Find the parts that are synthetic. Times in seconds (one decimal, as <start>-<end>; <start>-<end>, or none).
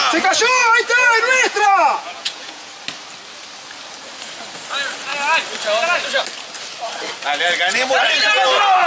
0.6-2.7